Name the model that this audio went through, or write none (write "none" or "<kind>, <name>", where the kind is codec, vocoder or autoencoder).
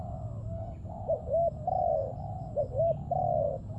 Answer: none